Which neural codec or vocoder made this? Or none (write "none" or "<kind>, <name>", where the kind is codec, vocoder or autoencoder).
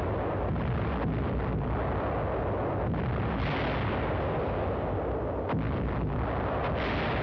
none